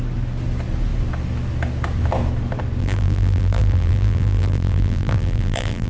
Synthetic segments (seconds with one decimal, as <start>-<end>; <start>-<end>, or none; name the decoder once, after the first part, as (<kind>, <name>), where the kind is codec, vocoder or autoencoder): 2.8-5.9 (vocoder, BigVGAN v2)